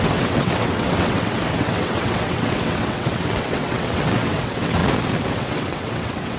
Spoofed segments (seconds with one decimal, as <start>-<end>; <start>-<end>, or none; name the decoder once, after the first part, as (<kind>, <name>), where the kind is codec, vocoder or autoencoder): 0.0-4.8 (vocoder, WaveNeXt); 5.3-6.4